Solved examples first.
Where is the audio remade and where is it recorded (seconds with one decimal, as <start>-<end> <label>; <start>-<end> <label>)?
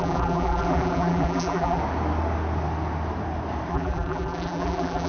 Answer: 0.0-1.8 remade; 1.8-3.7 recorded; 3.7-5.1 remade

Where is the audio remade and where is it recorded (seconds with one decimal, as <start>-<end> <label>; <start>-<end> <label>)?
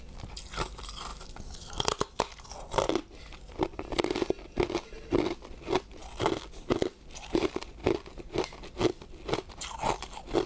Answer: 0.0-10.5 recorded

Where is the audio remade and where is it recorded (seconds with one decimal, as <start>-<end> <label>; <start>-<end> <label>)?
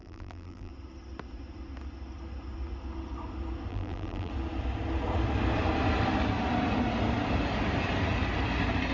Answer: 0.0-0.7 remade; 0.7-3.7 recorded; 3.7-4.3 remade; 4.3-8.9 recorded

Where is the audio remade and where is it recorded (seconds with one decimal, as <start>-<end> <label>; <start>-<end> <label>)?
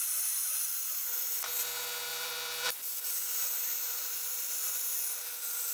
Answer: 0.0-2.1 recorded; 2.1-4.8 remade; 4.8-5.7 recorded